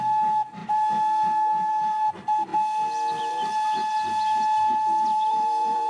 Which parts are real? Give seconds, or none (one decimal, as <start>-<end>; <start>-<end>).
0.0-5.1